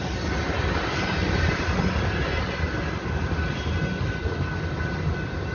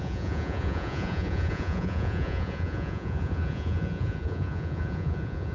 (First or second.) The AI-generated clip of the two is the second